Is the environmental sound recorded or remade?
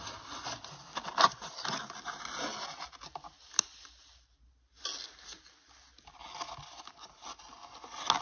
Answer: recorded